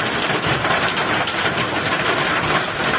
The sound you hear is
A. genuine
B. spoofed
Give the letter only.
A